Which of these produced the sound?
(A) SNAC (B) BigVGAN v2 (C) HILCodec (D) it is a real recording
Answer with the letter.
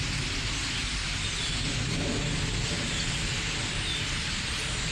D